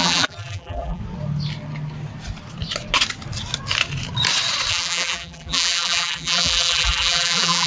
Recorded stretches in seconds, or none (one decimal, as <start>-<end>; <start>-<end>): 1.0-4.7